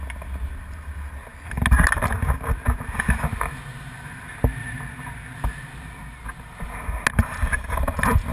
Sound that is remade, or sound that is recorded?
recorded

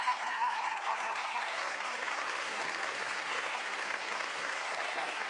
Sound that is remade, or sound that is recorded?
remade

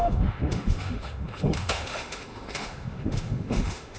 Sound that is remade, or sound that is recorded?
remade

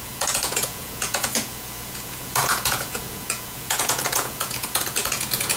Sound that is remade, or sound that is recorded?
remade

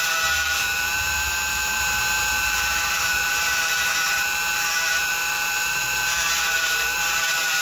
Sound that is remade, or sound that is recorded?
remade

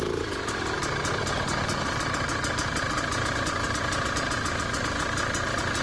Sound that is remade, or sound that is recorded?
recorded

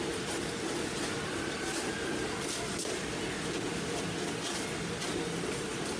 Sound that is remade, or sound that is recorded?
recorded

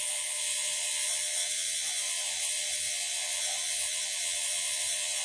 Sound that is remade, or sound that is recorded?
remade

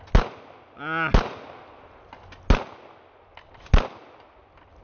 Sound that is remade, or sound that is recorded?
recorded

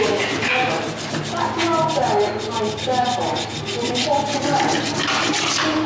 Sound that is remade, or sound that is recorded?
recorded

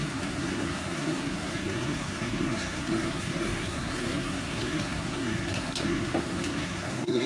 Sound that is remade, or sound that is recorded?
remade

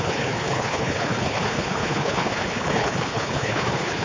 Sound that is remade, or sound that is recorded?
remade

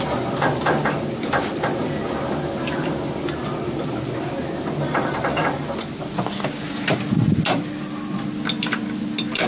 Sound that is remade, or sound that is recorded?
recorded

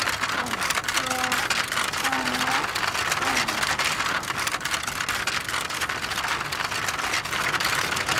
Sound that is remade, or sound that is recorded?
recorded